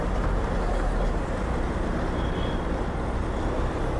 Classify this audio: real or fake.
real